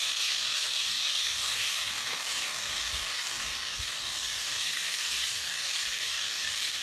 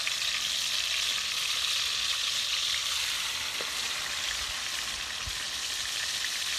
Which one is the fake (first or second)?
first